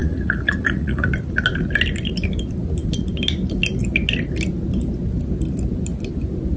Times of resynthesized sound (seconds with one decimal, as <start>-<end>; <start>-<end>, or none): 0.0-1.1